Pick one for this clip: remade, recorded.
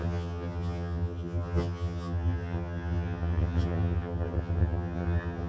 remade